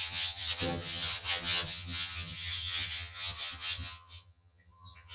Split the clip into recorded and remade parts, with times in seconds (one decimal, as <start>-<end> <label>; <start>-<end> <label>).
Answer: 0.0-5.1 remade